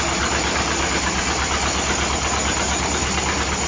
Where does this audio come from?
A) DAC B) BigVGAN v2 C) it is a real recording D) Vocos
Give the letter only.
C